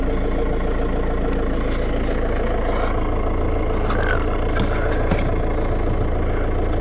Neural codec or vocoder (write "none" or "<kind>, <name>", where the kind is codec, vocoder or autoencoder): none